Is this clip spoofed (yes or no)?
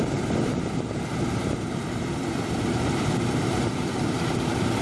yes